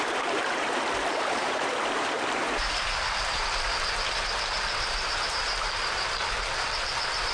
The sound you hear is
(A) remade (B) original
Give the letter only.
A